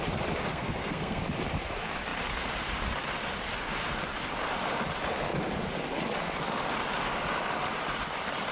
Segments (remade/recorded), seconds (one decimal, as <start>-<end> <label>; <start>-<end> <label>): 0.0-0.5 recorded; 0.5-1.2 remade; 1.2-8.5 recorded